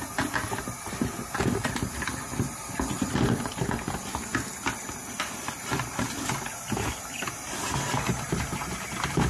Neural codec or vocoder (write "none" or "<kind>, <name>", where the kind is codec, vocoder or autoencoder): none